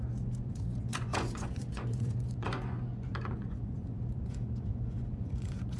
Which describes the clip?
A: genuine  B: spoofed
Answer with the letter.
B